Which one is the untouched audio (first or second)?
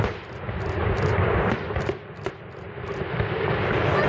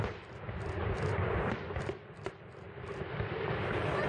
first